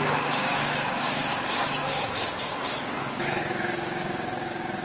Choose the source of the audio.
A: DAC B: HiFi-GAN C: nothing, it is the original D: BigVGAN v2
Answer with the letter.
A